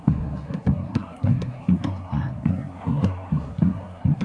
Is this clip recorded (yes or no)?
no